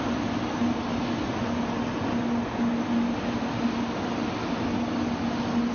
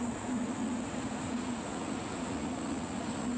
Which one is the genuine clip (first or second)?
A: first